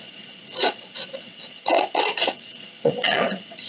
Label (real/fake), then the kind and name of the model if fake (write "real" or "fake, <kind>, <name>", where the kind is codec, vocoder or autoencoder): fake, vocoder, Vocos